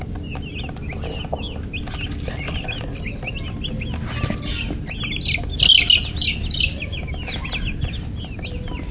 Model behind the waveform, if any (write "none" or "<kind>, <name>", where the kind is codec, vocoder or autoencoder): none